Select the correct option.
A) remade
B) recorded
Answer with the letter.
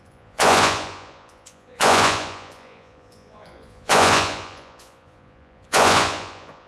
A